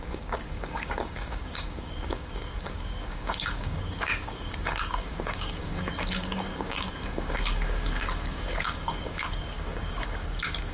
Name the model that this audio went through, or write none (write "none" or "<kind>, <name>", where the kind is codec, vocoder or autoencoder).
codec, DAC